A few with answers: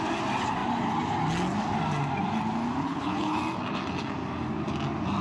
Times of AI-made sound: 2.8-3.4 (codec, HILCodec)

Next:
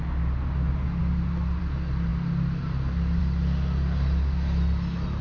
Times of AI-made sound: none

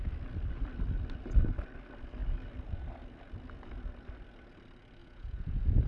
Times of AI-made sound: 5.0-5.9 (vocoder, Vocos)

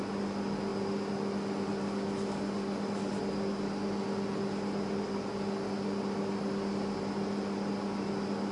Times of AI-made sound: none

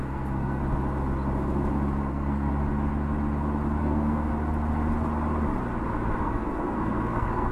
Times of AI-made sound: 0.0-0.6 (codec, SNAC); 2.1-2.5; 3.8-4.3; 6.2-7.5

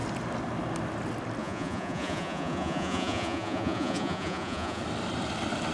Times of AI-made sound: 1.4-4.8 (vocoder, Vocos)

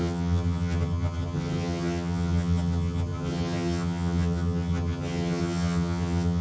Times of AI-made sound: 0.0-6.4 (vocoder, HiFi-GAN)